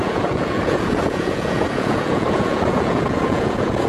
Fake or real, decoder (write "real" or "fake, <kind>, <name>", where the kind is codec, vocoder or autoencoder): fake, vocoder, Vocos